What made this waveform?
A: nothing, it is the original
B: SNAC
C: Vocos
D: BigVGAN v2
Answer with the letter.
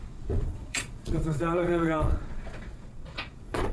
C